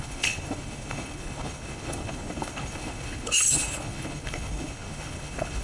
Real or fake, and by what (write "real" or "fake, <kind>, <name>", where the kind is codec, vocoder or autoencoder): fake, codec, HILCodec